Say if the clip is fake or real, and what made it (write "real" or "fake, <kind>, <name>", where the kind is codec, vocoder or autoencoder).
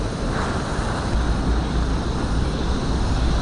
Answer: real